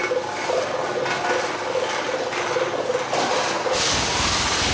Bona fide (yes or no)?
yes